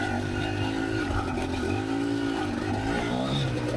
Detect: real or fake real